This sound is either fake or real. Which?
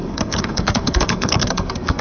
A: fake